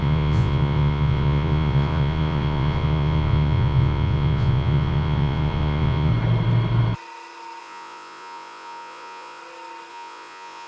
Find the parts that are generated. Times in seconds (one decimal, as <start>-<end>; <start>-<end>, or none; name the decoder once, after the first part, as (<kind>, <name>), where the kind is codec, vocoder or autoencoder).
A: 0.0-6.1 (vocoder, Vocos); 7.6-9.4; 9.9-10.7